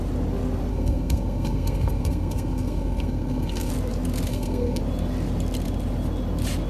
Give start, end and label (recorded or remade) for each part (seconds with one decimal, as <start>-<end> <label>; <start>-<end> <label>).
0.0-0.7 recorded; 0.7-3.7 remade; 3.7-4.3 recorded; 4.3-4.8 remade; 4.8-6.7 recorded